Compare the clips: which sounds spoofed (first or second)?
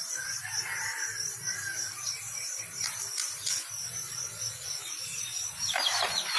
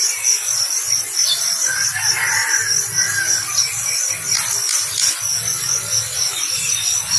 first